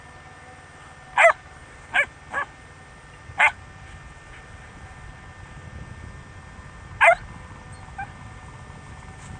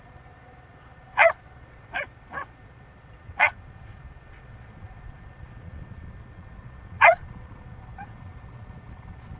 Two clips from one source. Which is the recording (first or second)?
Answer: first